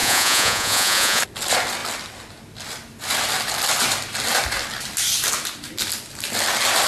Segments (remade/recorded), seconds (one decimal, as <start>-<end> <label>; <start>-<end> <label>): 0.0-1.2 remade; 1.2-6.9 recorded